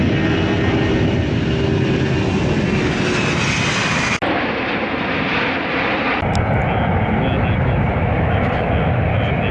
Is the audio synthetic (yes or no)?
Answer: no